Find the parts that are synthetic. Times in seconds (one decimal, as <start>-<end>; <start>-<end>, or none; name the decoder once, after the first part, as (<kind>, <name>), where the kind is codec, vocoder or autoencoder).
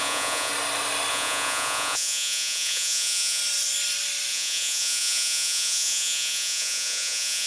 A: 0.0-0.5 (vocoder, Vocos); 1.1-3.4; 4.3-7.5